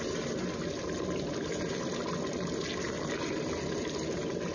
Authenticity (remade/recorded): recorded